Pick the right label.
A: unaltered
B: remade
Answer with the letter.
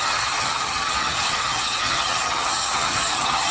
B